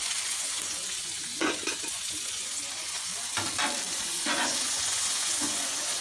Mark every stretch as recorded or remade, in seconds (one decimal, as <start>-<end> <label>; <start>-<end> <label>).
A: 0.0-3.1 remade; 3.1-3.9 recorded; 3.9-6.0 remade